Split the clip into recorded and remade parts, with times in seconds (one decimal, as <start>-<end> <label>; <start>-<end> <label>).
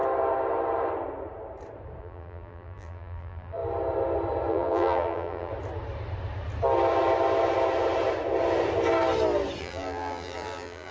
0.0-2.0 recorded; 2.0-3.6 remade; 3.6-4.5 recorded; 4.5-5.5 remade; 5.5-9.6 recorded; 9.6-10.9 remade